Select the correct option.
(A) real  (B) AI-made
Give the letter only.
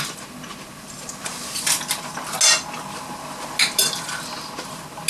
A